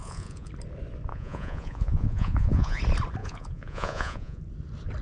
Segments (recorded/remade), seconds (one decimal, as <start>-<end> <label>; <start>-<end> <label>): 0.0-0.5 remade; 0.5-1.1 recorded; 1.1-2.8 remade; 2.8-3.2 recorded; 3.2-4.4 remade; 4.4-5.0 recorded